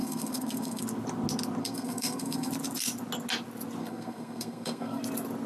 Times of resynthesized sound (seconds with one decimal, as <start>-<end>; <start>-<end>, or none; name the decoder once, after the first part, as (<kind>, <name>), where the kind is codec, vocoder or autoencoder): 0.0-0.8 (codec, SNAC); 1.6-2.5; 3.8-5.0